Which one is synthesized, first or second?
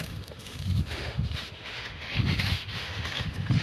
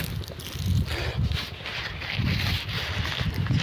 first